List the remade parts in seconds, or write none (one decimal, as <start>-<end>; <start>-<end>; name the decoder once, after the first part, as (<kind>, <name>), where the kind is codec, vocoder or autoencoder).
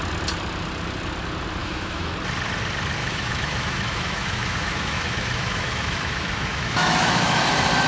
1.6-2.1 (autoencoder, DAC-VAE); 3.0-7.4